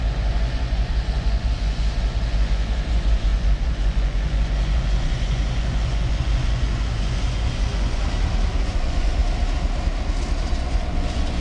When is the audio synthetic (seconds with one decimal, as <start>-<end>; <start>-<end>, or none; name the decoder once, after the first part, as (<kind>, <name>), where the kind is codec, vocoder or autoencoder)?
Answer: 0.0-8.0 (vocoder, Vocos); 8.6-9.2; 10.5-11.4